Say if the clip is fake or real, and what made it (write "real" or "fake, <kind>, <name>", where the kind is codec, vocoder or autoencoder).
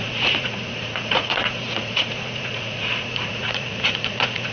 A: fake, vocoder, Vocos